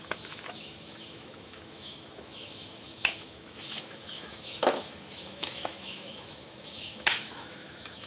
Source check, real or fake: fake